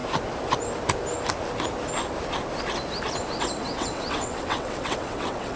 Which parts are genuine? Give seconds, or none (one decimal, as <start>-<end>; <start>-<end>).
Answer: 0.0-3.4